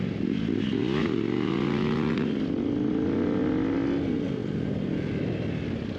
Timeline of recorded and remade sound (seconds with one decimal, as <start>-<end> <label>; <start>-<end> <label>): 0.0-6.0 recorded